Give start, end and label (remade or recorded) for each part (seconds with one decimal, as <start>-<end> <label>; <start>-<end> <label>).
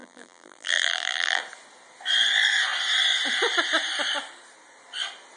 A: 0.0-1.4 remade; 1.4-5.4 recorded